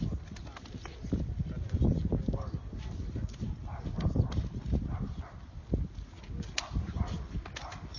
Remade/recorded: recorded